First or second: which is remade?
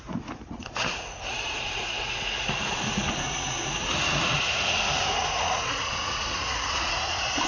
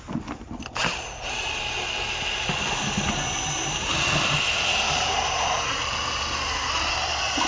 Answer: first